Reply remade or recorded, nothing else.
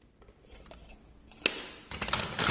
recorded